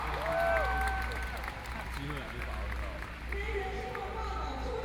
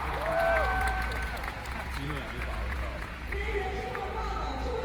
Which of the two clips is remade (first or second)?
second